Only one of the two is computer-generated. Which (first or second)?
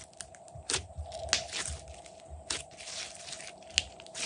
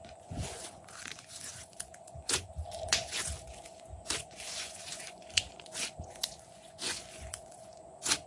second